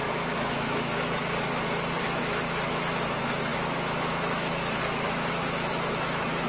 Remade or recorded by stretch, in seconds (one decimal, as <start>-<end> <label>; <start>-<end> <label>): 0.0-1.2 remade; 1.2-2.0 recorded; 2.0-6.5 remade